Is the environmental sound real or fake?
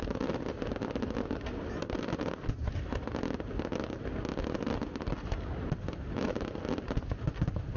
real